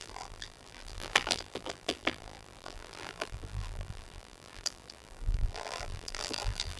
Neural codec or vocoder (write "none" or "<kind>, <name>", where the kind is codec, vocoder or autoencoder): vocoder, BigVGAN v2